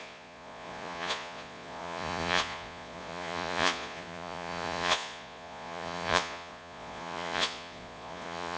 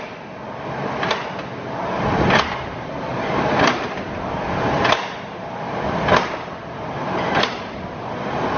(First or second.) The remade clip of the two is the first